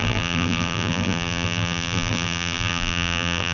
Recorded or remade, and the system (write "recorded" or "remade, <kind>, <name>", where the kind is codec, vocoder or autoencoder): remade, vocoder, BigVGAN v2